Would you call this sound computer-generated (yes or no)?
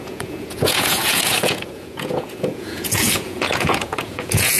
yes